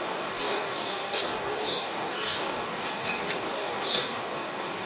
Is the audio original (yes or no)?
no